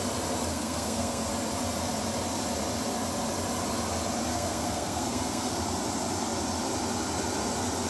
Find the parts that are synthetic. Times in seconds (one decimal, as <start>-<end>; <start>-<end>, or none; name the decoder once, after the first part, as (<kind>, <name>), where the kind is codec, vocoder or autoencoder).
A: 0.5-1.3 (codec, SNAC); 4.3-5.5